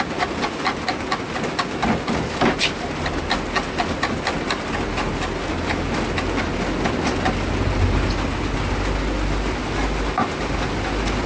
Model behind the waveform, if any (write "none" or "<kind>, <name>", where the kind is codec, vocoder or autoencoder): none